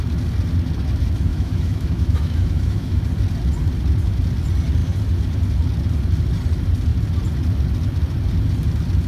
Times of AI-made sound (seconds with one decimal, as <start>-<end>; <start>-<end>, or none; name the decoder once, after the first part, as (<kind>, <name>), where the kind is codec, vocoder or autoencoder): 1.3-3.0 (autoencoder, DAC-VAE)